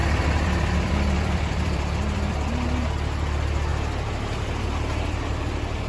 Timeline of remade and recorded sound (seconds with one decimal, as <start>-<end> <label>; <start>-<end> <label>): 0.0-2.3 remade; 2.3-5.9 recorded